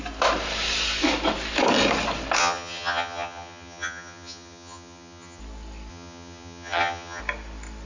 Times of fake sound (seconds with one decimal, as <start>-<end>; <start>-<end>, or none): 2.4-5.4; 5.9-7.2